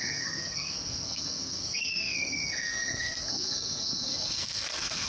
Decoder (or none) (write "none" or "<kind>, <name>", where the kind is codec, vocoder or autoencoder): codec, SNAC